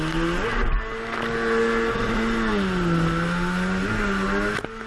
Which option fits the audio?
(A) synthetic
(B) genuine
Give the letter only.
B